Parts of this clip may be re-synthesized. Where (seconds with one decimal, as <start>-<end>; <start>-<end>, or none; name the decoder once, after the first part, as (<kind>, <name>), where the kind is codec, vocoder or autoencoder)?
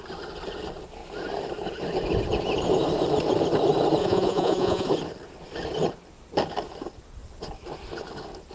4.0-4.9 (vocoder, Vocos)